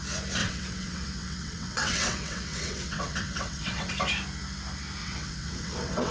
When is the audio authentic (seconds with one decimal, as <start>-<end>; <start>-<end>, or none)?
0.0-0.4; 3.9-5.0